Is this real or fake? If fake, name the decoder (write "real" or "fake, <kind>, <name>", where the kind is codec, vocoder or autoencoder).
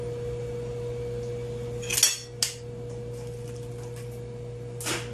real